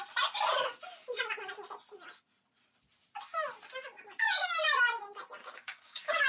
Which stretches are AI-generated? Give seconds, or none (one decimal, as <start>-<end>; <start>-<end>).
5.4-6.3